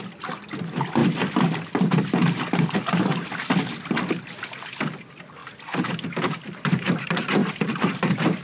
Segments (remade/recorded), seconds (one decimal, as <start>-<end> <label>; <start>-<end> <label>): 0.0-7.4 recorded; 7.4-8.4 remade

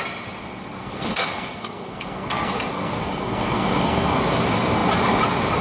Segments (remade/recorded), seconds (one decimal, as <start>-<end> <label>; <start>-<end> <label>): 0.0-0.8 recorded; 0.8-4.2 remade; 4.2-5.6 recorded

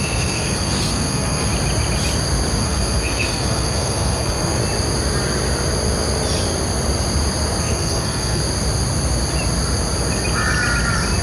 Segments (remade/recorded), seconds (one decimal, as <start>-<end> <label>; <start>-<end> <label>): 0.0-1.5 remade; 1.5-2.6 recorded; 2.6-4.6 remade; 4.6-7.6 recorded; 7.6-8.4 remade; 8.4-11.2 recorded

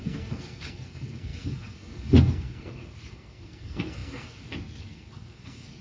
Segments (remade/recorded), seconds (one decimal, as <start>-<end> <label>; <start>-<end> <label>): 0.0-5.8 remade